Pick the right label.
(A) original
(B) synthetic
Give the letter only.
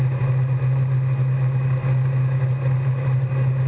A